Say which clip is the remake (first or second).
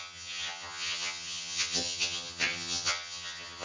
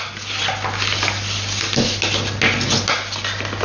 first